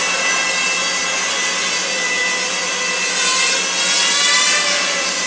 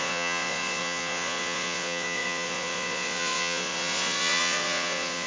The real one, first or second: first